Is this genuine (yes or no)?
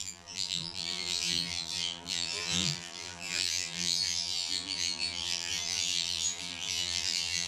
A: no